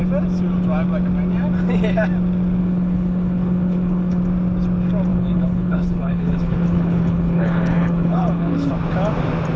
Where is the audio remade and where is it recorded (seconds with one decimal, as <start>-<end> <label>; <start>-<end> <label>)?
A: 0.0-2.6 recorded; 2.6-4.2 remade; 4.2-5.1 recorded; 5.1-8.7 remade; 8.7-9.6 recorded